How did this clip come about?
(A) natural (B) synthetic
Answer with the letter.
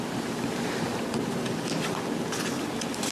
A